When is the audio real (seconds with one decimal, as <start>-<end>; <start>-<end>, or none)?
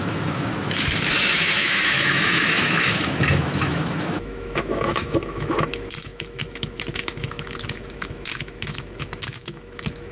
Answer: none